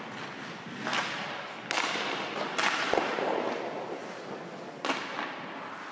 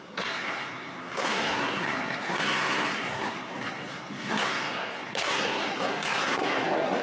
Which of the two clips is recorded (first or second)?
first